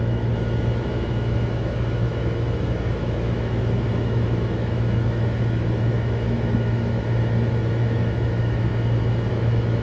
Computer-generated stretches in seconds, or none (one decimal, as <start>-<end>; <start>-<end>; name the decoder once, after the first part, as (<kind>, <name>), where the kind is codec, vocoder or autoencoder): 0.0-8.7 (autoencoder, DAC-VAE); 9.3-9.8

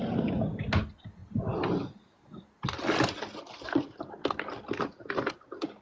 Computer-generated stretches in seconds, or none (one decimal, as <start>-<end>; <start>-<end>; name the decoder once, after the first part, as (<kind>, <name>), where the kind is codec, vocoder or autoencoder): none

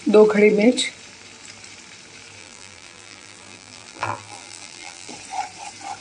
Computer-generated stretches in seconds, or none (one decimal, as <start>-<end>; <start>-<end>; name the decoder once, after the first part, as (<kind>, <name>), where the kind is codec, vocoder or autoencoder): 2.4-5.1 (vocoder, BigVGAN v2)